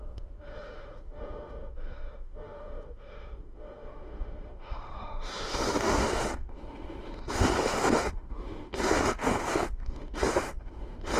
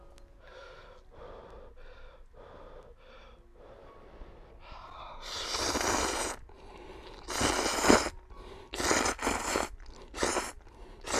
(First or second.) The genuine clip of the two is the second